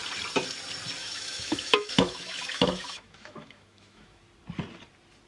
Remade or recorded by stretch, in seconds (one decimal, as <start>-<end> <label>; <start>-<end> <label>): 0.0-1.0 recorded; 1.0-4.2 remade; 4.2-5.3 recorded